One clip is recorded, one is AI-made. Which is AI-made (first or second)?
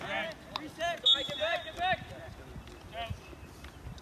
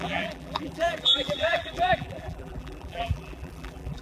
second